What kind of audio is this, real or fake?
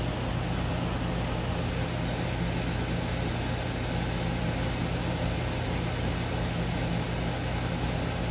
real